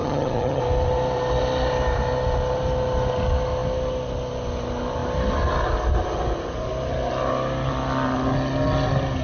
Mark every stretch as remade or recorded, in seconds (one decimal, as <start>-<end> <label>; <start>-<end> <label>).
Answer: 0.0-0.6 remade; 0.6-9.2 recorded